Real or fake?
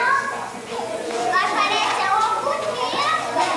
fake